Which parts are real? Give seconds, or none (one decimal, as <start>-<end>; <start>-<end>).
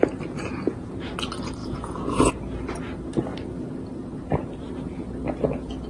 0.0-0.4; 1.1-1.6; 2.3-5.9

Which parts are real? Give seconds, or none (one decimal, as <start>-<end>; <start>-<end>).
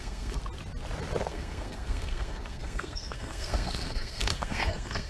0.4-1.3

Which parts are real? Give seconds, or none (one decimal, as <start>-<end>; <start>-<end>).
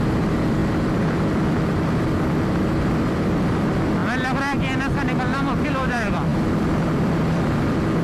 4.0-5.6